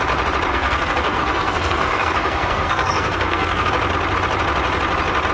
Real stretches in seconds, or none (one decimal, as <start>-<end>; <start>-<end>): 0.0-0.5; 3.7-5.3